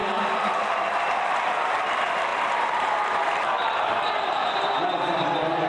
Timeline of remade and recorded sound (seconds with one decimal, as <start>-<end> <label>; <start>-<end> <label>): 0.0-2.3 remade; 2.3-3.4 recorded; 3.4-5.7 remade